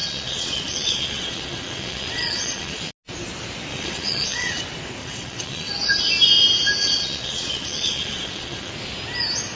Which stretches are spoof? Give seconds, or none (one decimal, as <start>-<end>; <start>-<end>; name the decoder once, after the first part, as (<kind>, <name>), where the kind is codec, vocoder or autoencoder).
0.0-2.9 (vocoder, WaveNeXt); 3.7-4.6; 5.0-5.7; 6.8-8.7